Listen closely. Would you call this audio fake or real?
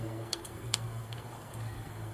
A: fake